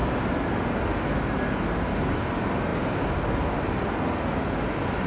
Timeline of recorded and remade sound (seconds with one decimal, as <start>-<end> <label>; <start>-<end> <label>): 0.0-5.1 recorded